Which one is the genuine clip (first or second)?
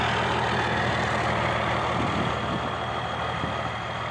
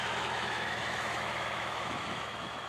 first